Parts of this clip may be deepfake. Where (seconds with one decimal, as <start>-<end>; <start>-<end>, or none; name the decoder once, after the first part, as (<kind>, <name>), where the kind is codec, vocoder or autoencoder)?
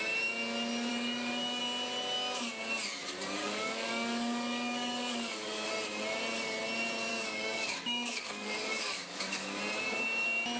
0.9-1.6 (codec, DAC); 3.4-5.7; 7.1-9.6